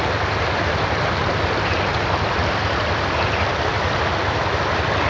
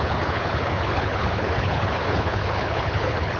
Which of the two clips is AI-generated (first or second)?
second